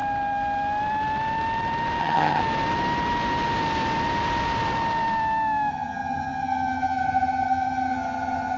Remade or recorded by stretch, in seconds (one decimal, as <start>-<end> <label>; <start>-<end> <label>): 0.0-2.0 recorded; 2.0-2.4 remade; 2.4-5.7 recorded; 5.7-8.6 remade